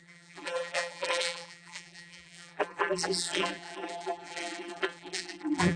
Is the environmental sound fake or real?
fake